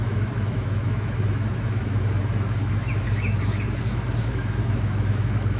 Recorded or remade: remade